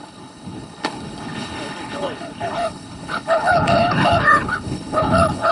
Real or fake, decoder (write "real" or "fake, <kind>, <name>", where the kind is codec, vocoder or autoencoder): fake, codec, HILCodec